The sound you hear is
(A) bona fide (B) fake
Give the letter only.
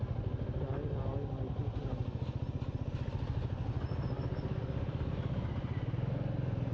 A